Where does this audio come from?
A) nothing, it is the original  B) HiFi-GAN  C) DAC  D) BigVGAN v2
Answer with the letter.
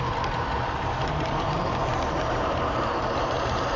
D